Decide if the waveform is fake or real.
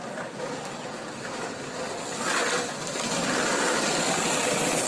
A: real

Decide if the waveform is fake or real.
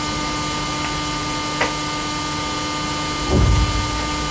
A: real